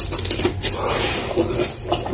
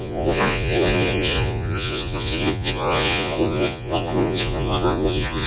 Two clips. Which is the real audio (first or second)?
first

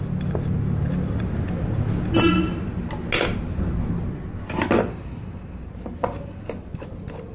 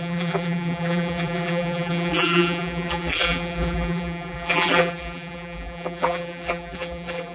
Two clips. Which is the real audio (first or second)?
first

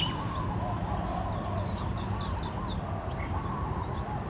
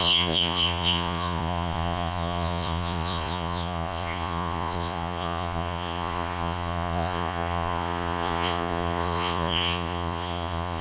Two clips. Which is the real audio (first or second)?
first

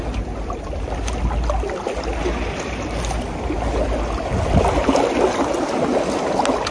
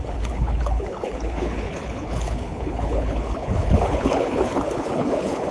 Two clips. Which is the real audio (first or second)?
first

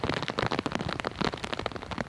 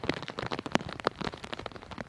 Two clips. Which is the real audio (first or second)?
first